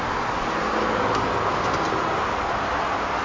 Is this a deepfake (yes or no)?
no